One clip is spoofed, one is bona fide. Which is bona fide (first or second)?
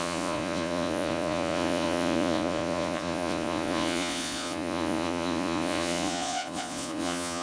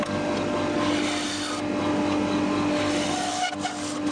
second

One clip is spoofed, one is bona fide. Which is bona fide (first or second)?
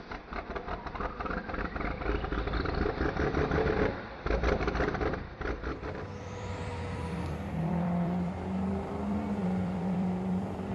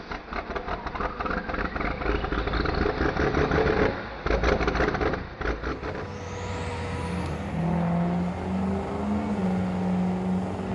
second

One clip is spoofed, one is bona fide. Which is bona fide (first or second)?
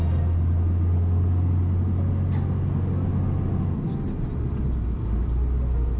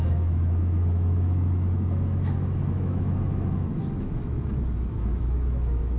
first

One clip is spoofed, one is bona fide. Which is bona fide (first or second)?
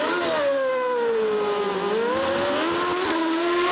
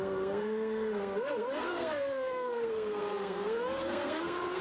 first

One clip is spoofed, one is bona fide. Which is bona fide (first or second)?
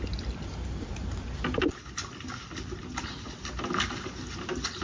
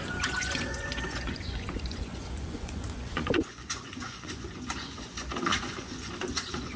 first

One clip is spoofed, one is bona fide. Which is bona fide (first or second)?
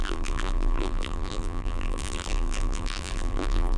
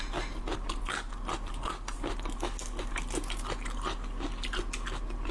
second